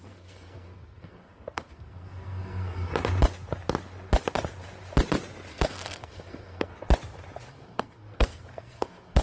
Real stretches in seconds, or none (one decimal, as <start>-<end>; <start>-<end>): 2.9-5.5; 6.7-7.5